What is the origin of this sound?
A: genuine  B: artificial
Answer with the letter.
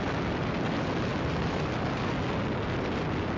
A